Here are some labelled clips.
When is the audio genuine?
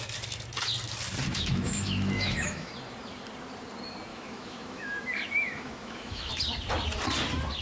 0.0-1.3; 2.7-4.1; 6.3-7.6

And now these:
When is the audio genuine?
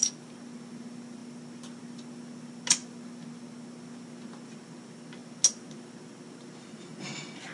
0.0-7.5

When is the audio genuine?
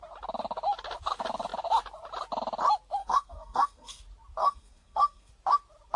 0.0-3.0; 4.0-4.4; 5.3-6.0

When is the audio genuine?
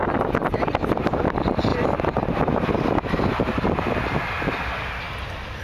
0.0-5.6